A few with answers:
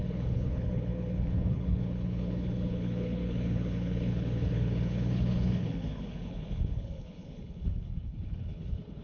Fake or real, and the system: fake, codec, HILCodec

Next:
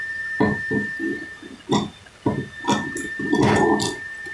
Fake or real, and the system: real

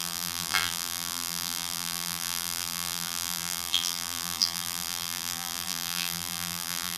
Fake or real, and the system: fake, vocoder, BigVGAN v2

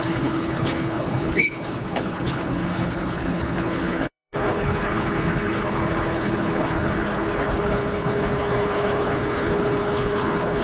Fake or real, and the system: fake, codec, HILCodec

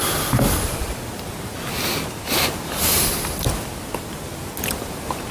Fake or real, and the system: real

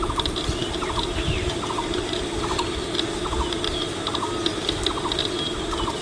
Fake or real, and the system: real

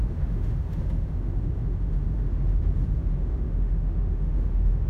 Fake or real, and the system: fake, autoencoder, DAC-VAE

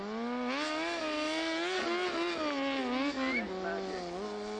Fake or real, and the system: real